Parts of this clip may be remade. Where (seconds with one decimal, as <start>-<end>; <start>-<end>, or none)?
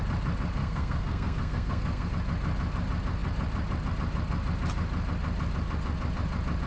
0.6-2.1